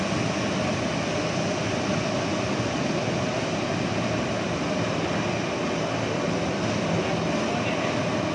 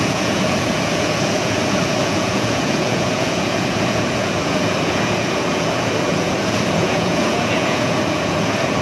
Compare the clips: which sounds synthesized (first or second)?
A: second